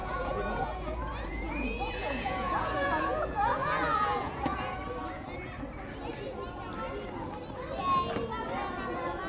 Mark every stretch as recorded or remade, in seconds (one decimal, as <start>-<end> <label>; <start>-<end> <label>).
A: 0.0-4.8 remade; 4.8-9.3 recorded